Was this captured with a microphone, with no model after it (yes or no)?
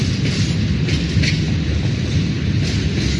yes